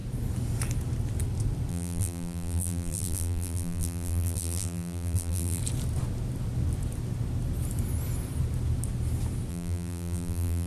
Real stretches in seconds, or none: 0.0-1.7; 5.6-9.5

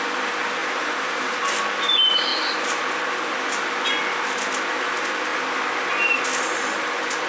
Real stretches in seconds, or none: 0.0-0.6; 1.4-7.3

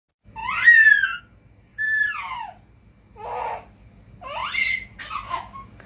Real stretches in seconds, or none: 0.0-1.7; 2.2-4.4; 5.0-5.9

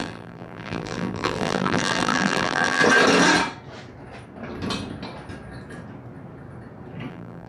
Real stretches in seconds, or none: 2.8-7.1